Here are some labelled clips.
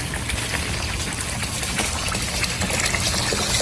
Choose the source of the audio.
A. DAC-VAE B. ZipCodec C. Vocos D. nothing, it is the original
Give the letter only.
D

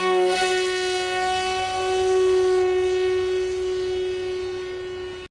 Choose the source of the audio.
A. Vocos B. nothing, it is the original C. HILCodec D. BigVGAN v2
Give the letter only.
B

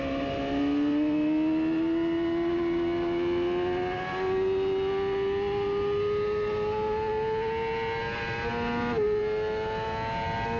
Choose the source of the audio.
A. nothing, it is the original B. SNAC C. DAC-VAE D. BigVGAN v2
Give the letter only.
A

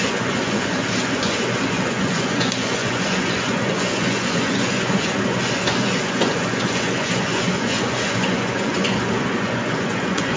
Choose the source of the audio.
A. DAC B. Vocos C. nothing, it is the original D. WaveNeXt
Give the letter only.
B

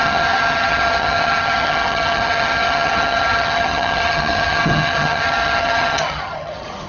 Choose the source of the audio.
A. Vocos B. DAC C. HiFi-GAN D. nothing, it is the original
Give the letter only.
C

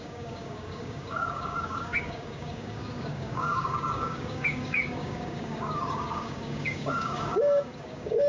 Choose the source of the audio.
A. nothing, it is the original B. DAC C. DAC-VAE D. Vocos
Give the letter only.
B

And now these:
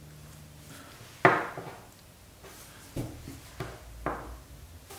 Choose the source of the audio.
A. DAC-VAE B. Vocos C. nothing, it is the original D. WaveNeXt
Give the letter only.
C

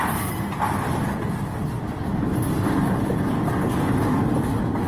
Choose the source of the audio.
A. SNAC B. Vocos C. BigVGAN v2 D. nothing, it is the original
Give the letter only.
D